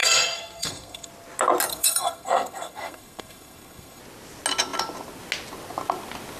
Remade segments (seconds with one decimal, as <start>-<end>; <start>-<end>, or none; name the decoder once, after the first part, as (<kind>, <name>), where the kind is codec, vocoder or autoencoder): 0.0-1.1 (codec, SNAC); 1.7-4.0